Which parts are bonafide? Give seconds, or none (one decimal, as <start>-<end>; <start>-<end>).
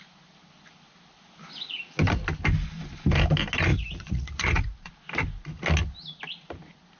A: 0.0-3.7; 4.9-7.0